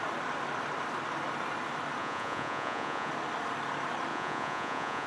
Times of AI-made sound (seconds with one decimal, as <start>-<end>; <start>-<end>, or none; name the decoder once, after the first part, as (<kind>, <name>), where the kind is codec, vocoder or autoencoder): 2.0-3.1 (vocoder, Vocos); 4.1-5.1